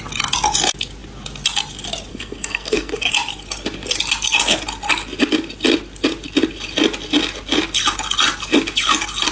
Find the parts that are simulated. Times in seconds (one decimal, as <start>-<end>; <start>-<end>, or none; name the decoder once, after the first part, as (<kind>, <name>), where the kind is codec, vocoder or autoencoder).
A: 2.1-3.1 (codec, SNAC)